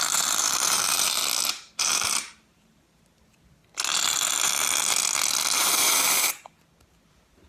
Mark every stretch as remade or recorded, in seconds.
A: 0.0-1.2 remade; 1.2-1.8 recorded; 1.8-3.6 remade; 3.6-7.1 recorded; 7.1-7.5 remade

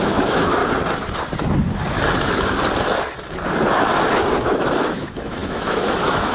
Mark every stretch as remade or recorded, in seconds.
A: 0.0-0.6 remade; 0.6-4.4 recorded; 4.4-6.3 remade

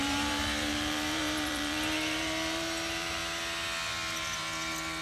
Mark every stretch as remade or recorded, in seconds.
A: 0.0-3.2 remade; 3.2-5.0 recorded

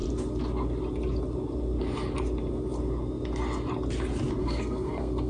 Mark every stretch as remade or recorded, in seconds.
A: 0.0-4.4 recorded; 4.4-5.3 remade

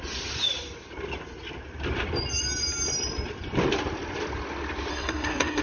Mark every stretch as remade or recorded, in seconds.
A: 0.0-4.9 recorded; 4.9-5.6 remade